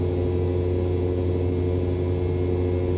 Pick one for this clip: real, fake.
real